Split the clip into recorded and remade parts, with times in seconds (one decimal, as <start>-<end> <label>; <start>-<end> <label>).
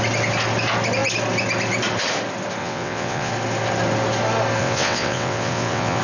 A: 0.0-2.6 recorded; 2.6-3.3 remade; 3.3-4.6 recorded; 4.6-6.0 remade